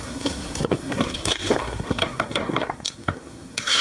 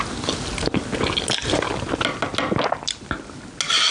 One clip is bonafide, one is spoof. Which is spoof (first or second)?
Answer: first